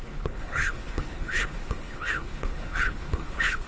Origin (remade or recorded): remade